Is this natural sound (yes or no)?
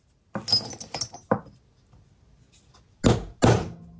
yes